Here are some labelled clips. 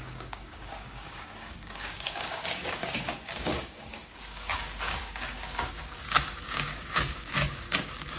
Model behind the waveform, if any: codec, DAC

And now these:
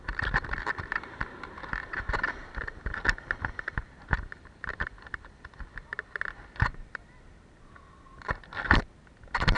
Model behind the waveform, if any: vocoder, BigVGAN v2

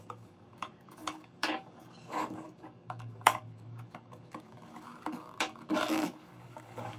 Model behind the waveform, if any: codec, DAC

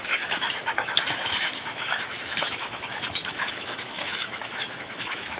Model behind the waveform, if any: autoencoder, DAC-VAE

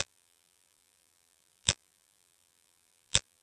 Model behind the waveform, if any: vocoder, BigVGAN v2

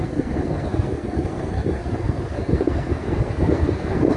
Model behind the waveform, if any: codec, SNAC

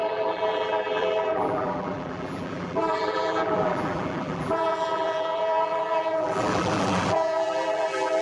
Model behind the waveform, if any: vocoder, BigVGAN v2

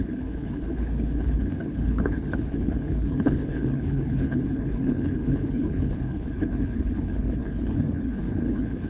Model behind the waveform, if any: codec, HILCodec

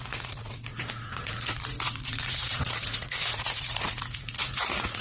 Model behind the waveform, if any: vocoder, Vocos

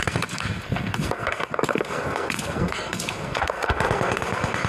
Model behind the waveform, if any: codec, SNAC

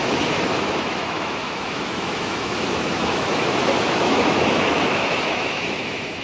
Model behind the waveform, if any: autoencoder, DAC-VAE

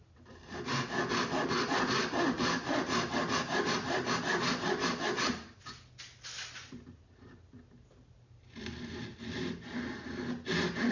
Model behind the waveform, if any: none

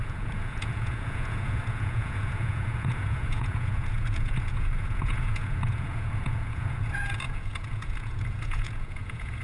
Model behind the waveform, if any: vocoder, Vocos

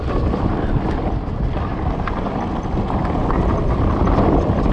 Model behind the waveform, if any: none